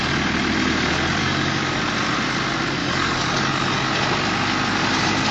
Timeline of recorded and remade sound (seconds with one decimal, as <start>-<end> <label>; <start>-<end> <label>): 0.0-1.2 recorded; 1.2-1.8 remade; 1.8-2.8 recorded; 2.8-3.9 remade; 3.9-5.3 recorded